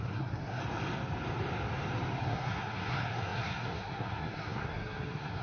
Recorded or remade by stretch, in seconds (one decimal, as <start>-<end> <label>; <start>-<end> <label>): 0.0-0.6 remade; 0.6-2.2 recorded; 2.2-5.4 remade